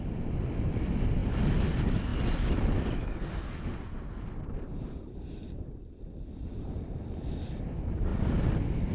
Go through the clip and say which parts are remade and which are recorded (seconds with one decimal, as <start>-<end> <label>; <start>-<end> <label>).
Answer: 0.0-8.9 recorded

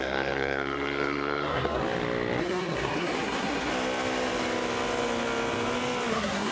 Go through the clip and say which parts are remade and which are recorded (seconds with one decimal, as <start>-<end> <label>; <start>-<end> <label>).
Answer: 0.0-1.8 remade; 1.8-2.4 recorded; 2.4-3.7 remade; 3.7-6.1 recorded; 6.1-6.5 remade

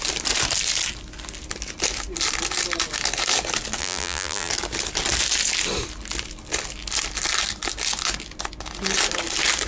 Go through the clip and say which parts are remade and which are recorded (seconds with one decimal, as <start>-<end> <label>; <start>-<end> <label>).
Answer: 0.0-3.8 recorded; 3.8-4.5 remade; 4.5-9.7 recorded

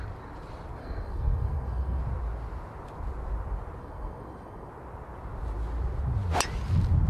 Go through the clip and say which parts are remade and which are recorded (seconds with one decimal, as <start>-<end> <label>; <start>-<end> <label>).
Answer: 0.0-0.8 recorded; 0.8-2.0 remade; 2.0-3.8 recorded; 3.8-4.7 remade; 4.7-7.1 recorded

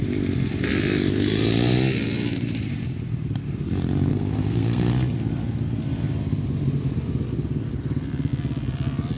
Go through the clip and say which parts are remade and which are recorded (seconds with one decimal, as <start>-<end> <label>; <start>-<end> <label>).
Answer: 0.0-4.1 recorded; 4.1-4.9 remade; 4.9-9.2 recorded